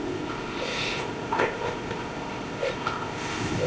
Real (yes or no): no